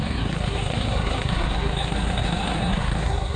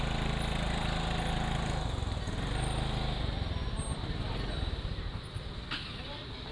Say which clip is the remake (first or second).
first